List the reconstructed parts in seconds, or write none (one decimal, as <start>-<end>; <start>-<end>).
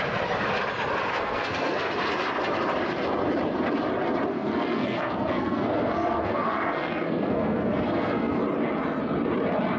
1.1-1.9; 4.3-8.4